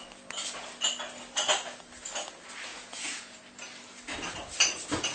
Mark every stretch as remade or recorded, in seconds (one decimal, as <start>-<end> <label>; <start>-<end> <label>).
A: 0.0-2.7 recorded; 2.7-3.4 remade; 3.4-5.1 recorded